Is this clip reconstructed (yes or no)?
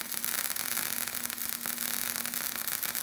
no